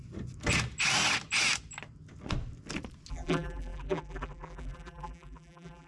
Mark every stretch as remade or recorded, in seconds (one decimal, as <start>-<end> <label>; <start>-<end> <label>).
0.0-3.1 recorded; 3.1-5.9 remade

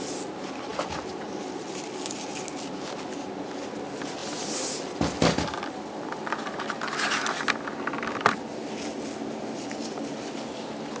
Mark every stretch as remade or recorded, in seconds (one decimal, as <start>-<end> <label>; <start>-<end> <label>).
0.0-0.7 recorded; 0.7-1.4 remade; 1.4-4.2 recorded; 4.2-7.1 remade; 7.1-11.0 recorded

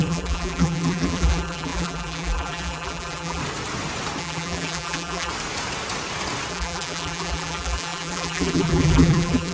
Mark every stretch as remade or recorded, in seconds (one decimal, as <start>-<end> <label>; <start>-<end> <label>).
0.0-3.4 remade; 3.4-4.2 recorded; 4.2-5.3 remade; 5.3-6.5 recorded; 6.5-9.5 remade